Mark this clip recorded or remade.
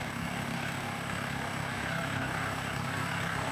remade